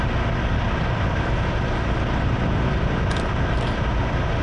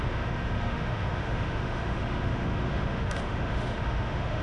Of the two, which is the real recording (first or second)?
first